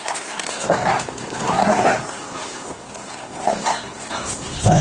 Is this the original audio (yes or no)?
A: no